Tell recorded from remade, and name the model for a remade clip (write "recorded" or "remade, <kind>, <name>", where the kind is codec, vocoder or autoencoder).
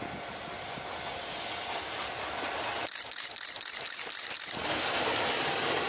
recorded